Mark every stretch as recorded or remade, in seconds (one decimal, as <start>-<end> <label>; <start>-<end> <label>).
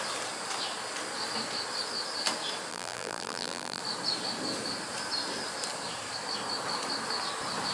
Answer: 0.0-2.7 recorded; 2.7-3.8 remade; 3.8-7.7 recorded